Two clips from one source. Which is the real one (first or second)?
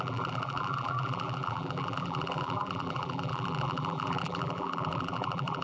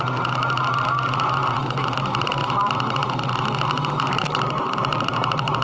second